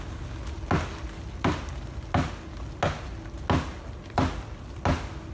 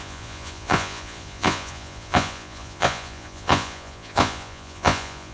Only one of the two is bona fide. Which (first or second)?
first